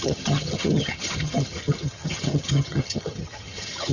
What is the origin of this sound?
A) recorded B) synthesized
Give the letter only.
B